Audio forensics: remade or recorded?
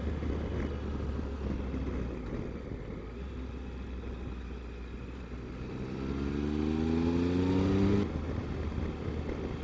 recorded